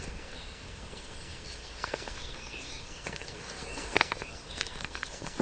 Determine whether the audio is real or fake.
fake